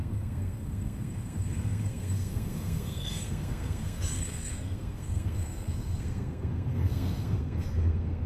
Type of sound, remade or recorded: remade